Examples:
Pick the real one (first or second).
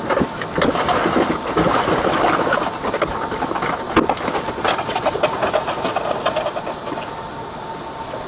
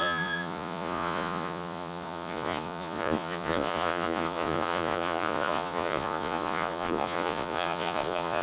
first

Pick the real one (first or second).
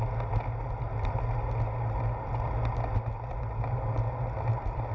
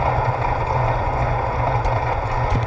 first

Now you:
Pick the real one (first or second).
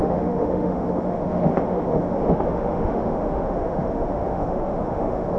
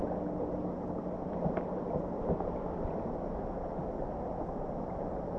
second